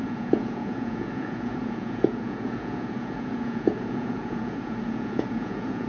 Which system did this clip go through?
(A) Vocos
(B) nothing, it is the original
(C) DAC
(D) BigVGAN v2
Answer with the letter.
A